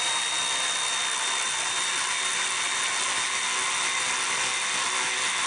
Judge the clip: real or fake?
real